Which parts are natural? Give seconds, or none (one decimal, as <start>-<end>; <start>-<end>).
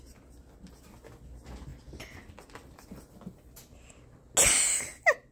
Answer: 0.0-5.3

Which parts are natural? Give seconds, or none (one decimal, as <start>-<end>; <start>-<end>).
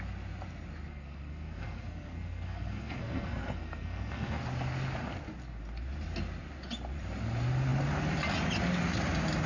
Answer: 0.0-0.9; 4.4-9.5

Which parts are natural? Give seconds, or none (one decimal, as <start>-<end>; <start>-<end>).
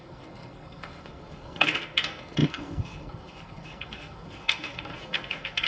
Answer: none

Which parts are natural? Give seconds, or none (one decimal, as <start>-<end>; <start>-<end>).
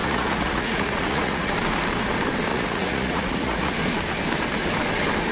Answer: 1.5-2.5; 3.7-5.3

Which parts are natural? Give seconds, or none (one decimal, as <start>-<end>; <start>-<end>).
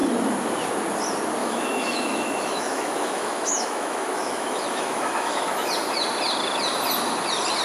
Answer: 0.0-1.4; 5.7-7.6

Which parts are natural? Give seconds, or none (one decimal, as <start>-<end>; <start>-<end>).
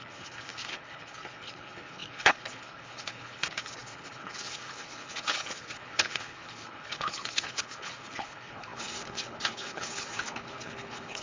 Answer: none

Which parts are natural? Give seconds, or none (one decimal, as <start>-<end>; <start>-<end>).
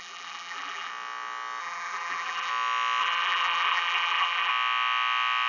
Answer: 0.9-1.6; 2.5-3.0; 4.5-5.5